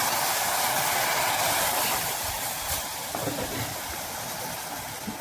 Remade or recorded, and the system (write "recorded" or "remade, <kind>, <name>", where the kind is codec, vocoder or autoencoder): recorded